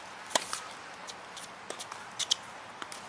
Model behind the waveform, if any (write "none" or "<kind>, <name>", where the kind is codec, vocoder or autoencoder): none